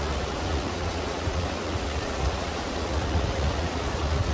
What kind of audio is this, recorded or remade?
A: remade